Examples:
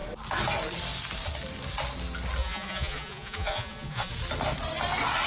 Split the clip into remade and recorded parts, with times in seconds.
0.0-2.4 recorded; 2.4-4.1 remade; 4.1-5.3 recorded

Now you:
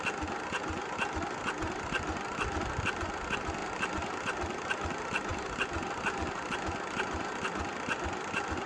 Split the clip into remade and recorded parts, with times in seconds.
0.0-5.3 recorded; 5.3-8.7 remade

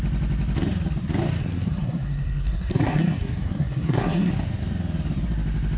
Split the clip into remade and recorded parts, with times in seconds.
0.0-1.4 recorded; 1.4-4.3 remade; 4.3-5.8 recorded

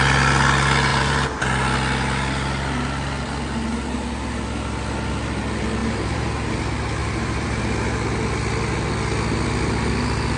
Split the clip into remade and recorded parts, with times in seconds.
0.0-0.9 recorded; 0.9-1.4 remade; 1.4-5.8 recorded; 5.8-6.6 remade; 6.6-7.0 recorded; 7.0-7.6 remade; 7.6-10.4 recorded

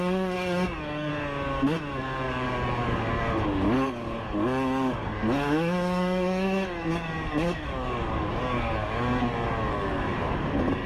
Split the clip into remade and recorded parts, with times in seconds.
0.0-1.1 remade; 1.1-1.8 recorded; 1.8-10.9 remade